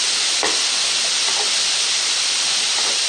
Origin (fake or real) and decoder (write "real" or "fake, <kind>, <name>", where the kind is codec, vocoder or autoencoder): real